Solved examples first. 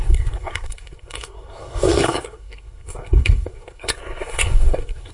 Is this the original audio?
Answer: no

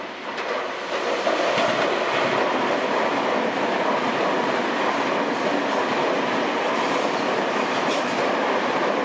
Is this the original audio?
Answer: yes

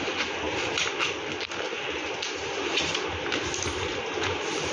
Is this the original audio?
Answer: yes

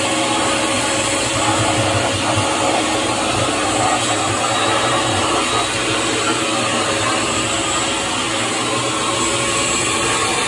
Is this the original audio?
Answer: yes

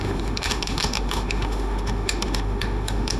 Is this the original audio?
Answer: no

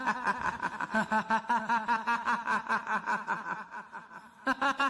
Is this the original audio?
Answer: yes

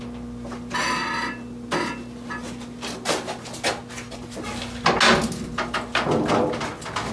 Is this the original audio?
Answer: yes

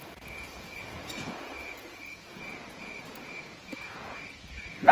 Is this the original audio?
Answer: no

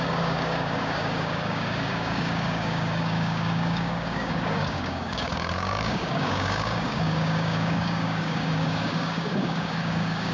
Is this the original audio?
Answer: no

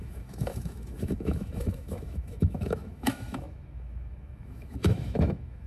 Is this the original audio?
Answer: no